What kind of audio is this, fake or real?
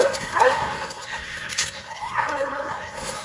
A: fake